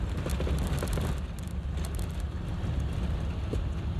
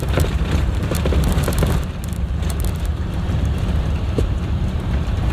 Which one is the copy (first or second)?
second